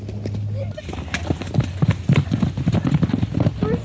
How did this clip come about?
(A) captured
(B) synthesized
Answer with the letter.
A